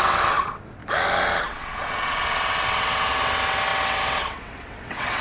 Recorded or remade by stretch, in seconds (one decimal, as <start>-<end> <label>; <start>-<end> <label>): 0.0-0.8 remade; 0.8-1.4 recorded; 1.4-5.2 remade

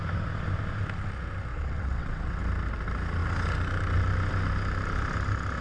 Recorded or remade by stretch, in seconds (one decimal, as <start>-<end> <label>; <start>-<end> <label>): 0.0-1.5 recorded; 1.5-2.4 remade; 2.4-5.6 recorded